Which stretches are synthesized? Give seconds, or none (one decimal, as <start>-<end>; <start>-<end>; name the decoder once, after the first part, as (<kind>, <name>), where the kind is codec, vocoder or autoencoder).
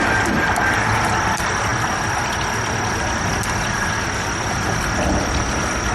0.0-1.7 (vocoder, BigVGAN v2); 5.2-5.9